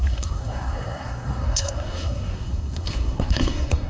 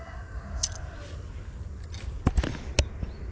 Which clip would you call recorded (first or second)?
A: second